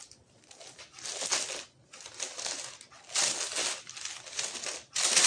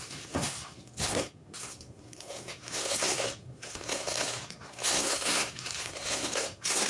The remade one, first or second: second